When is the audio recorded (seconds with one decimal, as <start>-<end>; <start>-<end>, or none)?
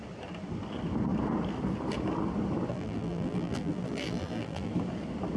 0.0-2.7; 4.7-5.4